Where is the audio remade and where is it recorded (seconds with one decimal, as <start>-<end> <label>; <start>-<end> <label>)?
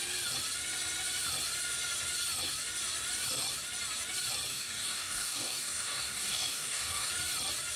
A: 0.0-4.5 recorded; 4.5-7.1 remade; 7.1-7.8 recorded